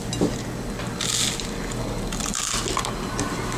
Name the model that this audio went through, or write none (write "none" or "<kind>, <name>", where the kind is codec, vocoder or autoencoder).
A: none